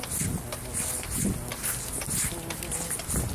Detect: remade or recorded recorded